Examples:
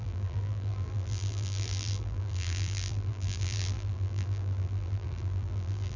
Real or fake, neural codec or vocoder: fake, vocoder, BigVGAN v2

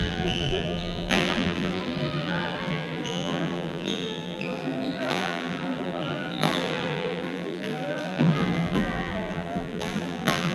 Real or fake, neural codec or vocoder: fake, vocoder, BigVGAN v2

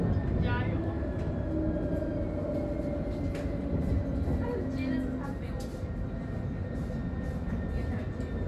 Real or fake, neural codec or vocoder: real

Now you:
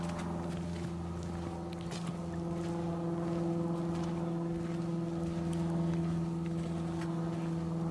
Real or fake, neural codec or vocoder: real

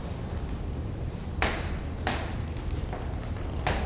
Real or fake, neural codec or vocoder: fake, vocoder, BigVGAN v2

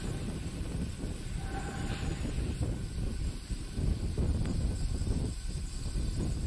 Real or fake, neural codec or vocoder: fake, vocoder, BigVGAN v2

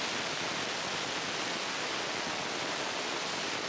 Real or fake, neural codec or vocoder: real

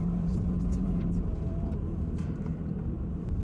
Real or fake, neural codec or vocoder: fake, vocoder, BigVGAN v2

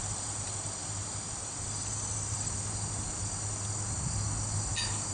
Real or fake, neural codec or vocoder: real